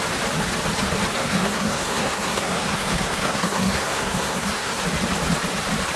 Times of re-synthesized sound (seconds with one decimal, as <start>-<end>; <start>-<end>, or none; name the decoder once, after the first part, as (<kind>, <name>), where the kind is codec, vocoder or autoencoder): 1.2-4.8 (codec, SNAC)